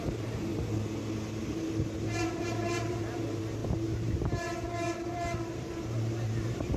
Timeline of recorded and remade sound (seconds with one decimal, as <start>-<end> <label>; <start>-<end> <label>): 0.0-0.5 remade; 0.5-2.4 recorded; 2.4-6.8 remade